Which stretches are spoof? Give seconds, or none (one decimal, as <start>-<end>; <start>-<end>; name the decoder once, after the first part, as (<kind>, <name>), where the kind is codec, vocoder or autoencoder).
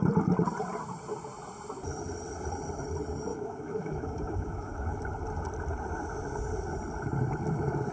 3.3-5.0 (autoencoder, DAC-VAE)